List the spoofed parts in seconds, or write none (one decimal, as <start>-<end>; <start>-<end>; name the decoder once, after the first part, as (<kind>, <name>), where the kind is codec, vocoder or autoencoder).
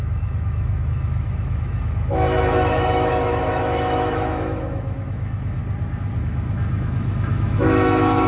0.0-5.6 (autoencoder, DAC-VAE); 6.2-8.3